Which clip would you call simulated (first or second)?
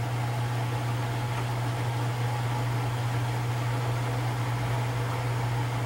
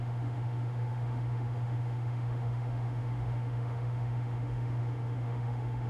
second